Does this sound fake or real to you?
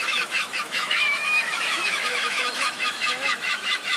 fake